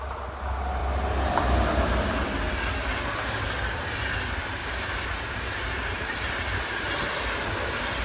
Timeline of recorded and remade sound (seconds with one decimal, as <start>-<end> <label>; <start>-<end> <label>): 0.0-4.6 recorded; 4.6-6.4 remade; 6.4-8.0 recorded